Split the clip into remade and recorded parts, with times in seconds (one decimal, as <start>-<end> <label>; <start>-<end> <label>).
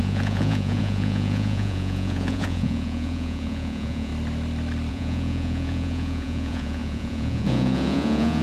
0.0-4.1 remade; 4.1-4.9 recorded; 4.9-8.4 remade